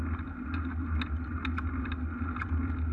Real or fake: real